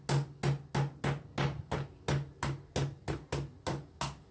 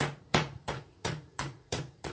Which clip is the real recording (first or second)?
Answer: first